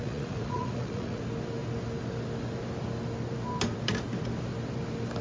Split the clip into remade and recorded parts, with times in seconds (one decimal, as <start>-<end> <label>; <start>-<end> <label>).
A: 0.0-1.2 remade; 1.2-5.2 recorded

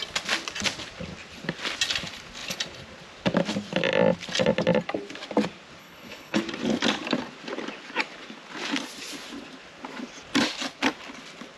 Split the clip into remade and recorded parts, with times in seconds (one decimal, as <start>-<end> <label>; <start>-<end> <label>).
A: 0.0-5.8 recorded; 5.8-6.4 remade; 6.4-11.6 recorded

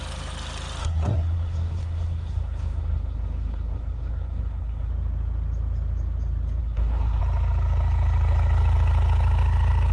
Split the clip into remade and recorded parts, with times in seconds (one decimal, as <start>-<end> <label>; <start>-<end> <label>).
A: 0.0-0.8 recorded; 0.8-4.9 remade; 4.9-6.6 recorded; 6.6-7.2 remade; 7.2-9.9 recorded

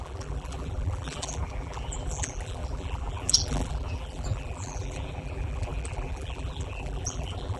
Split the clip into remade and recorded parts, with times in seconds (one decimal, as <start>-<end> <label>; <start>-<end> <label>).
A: 0.0-7.6 remade

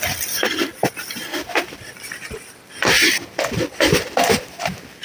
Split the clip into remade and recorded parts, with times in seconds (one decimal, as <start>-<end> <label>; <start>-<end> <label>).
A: 0.0-0.7 recorded; 0.7-3.4 remade; 3.4-5.0 recorded